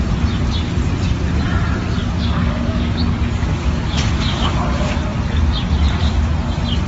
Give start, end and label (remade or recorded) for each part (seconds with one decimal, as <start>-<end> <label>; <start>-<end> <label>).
0.0-2.0 recorded; 2.0-3.0 remade; 3.0-3.6 recorded; 3.6-4.5 remade; 4.5-6.9 recorded